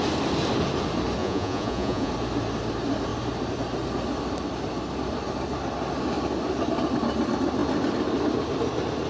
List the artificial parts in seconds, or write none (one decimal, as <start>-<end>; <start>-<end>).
1.2-2.1